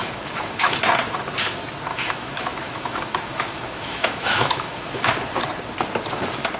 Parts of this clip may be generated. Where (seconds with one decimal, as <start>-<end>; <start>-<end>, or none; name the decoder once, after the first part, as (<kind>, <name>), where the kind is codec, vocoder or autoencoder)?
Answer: 0.0-0.8 (autoencoder, DAC-VAE); 1.9-5.0